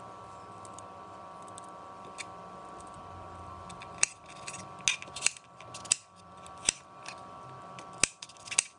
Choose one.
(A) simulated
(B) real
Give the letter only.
B